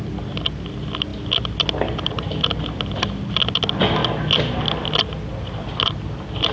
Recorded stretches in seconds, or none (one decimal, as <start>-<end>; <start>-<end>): 0.0-6.5